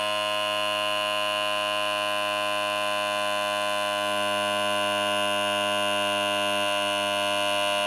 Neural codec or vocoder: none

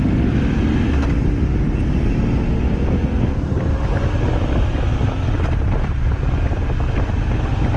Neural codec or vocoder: none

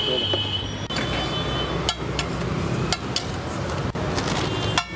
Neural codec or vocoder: none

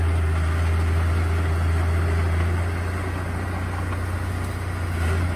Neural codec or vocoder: none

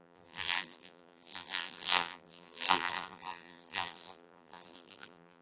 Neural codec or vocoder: vocoder, BigVGAN v2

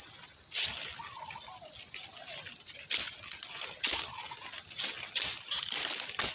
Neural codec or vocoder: none